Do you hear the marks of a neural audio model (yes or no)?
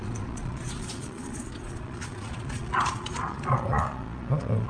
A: yes